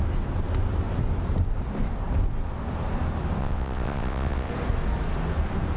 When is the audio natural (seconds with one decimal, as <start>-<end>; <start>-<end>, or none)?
0.0-3.4; 4.5-5.8